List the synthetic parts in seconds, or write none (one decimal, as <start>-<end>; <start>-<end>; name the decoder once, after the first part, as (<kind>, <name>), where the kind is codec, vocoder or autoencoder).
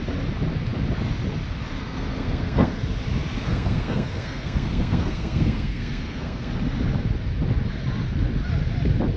1.8-2.7 (codec, SNAC); 3.5-6.5